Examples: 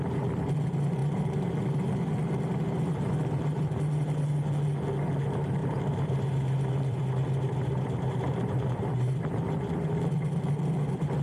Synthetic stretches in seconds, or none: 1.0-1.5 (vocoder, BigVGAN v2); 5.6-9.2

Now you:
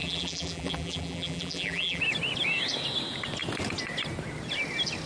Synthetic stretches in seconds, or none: 0.0-2.0 (vocoder, BigVGAN v2)